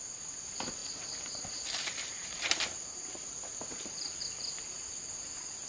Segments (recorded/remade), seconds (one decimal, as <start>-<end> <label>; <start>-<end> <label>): 0.0-0.8 recorded; 0.8-4.2 remade; 4.2-5.7 recorded